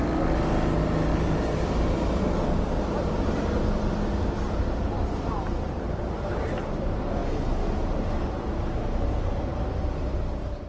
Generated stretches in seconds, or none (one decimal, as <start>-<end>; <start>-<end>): 1.1-6.0; 9.5-10.2